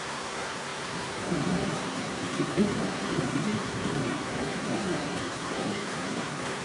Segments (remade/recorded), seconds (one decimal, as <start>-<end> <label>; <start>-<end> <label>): 0.0-6.6 remade